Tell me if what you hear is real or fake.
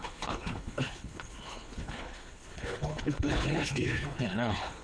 fake